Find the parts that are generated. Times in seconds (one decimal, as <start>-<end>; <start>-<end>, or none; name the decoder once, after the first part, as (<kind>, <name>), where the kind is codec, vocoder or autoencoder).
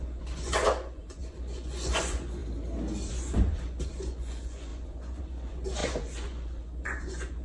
0.0-2.4 (vocoder, Vocos); 3.1-7.4